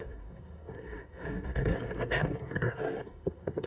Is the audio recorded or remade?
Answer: remade